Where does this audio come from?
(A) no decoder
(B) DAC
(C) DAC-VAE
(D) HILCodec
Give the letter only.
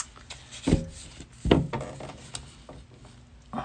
A